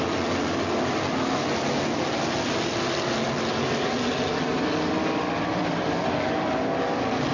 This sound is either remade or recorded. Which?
recorded